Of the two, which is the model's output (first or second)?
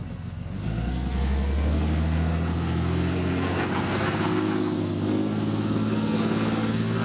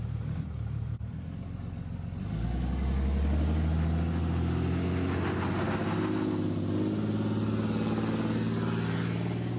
first